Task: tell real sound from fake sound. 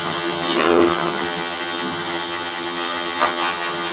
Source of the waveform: fake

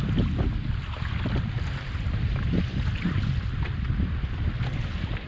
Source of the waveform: real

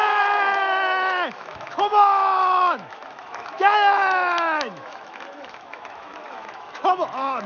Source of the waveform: fake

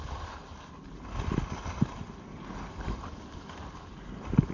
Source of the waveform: real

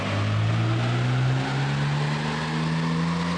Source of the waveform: real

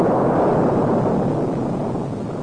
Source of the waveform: real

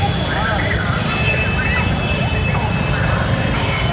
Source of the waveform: real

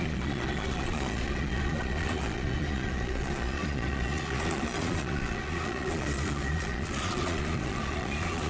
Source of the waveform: fake